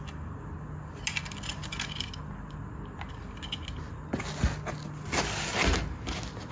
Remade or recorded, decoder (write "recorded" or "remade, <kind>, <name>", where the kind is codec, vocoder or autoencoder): recorded